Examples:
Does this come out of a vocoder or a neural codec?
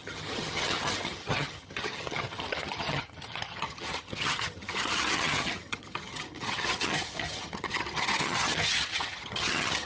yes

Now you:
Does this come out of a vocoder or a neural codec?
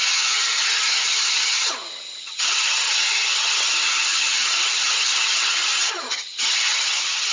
yes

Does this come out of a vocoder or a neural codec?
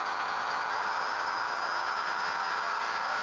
yes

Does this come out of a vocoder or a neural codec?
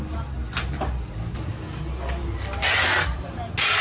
no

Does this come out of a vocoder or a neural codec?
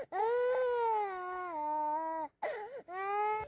no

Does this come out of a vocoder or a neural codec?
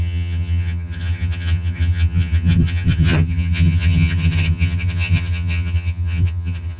yes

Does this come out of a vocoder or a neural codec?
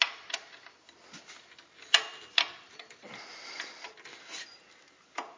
no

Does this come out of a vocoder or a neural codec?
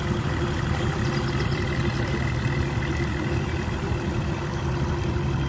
no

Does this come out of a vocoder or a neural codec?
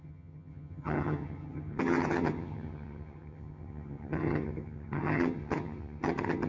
yes